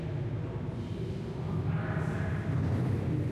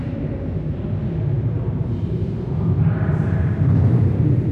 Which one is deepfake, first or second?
second